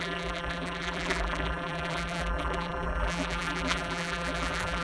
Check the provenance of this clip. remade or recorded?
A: remade